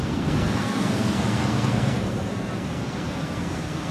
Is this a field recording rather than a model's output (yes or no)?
no